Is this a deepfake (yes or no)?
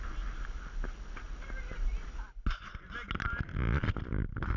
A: no